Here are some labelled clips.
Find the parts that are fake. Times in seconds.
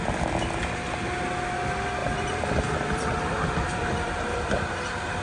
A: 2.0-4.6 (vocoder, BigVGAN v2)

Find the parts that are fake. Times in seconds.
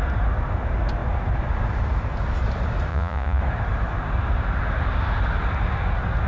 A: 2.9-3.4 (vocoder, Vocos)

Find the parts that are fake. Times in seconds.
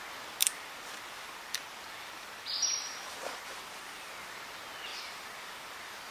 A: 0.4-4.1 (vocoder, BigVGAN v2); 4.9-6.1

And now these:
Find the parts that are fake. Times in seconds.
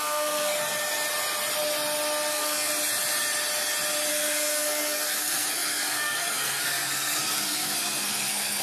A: 0.0-0.5 (codec, SNAC); 2.3-2.7; 4.1-8.6